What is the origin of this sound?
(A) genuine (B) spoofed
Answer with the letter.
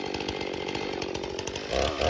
A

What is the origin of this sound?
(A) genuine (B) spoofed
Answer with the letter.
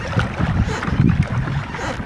A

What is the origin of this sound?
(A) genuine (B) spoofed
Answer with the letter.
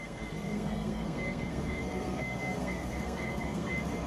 B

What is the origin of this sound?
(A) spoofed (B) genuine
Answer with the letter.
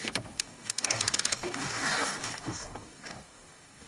A